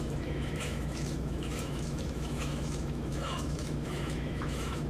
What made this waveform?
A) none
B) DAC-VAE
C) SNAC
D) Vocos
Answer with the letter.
B